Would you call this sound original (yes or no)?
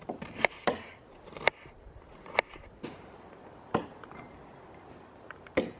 yes